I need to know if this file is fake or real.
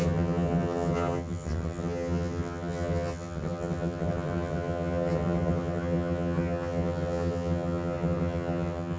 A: fake